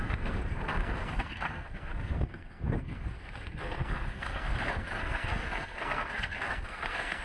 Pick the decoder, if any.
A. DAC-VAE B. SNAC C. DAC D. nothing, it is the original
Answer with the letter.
B